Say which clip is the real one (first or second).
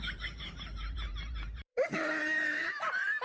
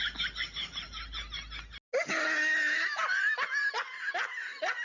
second